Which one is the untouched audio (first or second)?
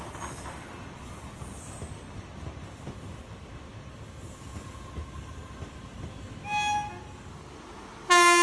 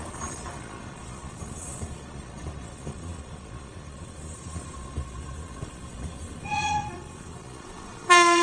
first